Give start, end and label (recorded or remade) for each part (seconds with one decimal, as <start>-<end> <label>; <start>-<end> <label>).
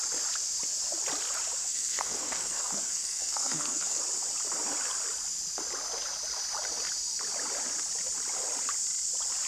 0.0-1.6 recorded; 1.6-4.0 remade; 4.0-9.5 recorded